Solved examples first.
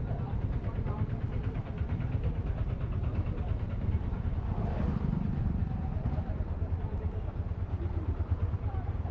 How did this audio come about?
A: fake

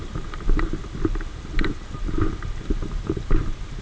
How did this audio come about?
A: real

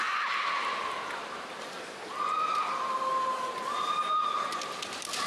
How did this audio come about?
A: fake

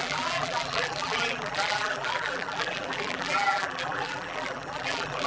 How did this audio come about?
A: fake